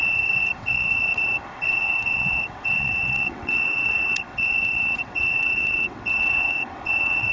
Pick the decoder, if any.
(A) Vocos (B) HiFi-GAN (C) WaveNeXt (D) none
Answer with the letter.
C